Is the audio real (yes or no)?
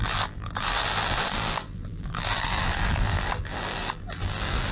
no